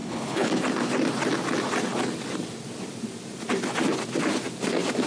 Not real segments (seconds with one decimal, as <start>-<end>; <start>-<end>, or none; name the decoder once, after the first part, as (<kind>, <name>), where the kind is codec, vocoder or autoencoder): 0.0-0.5 (codec, HILCodec)